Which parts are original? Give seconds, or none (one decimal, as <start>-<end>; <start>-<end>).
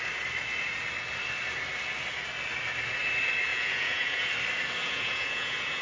0.0-3.5; 4.3-4.8